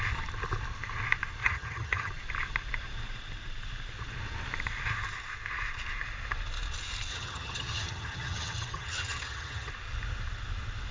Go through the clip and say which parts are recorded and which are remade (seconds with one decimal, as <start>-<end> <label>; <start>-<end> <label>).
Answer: 0.0-1.4 recorded; 1.4-2.1 remade; 2.1-7.1 recorded; 7.1-9.7 remade; 9.7-10.9 recorded